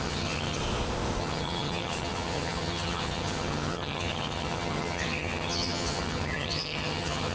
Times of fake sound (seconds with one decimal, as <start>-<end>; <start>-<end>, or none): 0.0-0.6; 1.2-7.3